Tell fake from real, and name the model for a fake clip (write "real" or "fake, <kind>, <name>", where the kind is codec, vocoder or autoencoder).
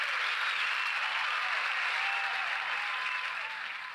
real